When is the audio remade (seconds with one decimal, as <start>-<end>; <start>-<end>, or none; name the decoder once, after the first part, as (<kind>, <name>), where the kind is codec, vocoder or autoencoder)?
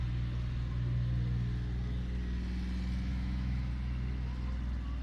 3.1-3.7 (autoencoder, DAC-VAE)